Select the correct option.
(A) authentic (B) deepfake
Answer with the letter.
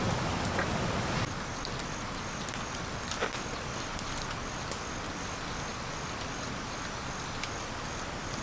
A